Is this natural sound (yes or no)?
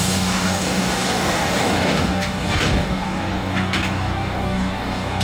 no